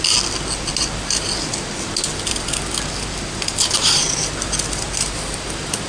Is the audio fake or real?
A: real